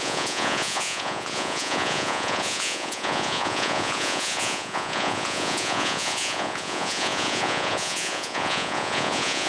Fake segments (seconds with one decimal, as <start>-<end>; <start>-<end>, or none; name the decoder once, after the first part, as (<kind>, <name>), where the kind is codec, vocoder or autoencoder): 0.0-9.5 (vocoder, Vocos)